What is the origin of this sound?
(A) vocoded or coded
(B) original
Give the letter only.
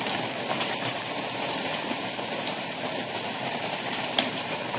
A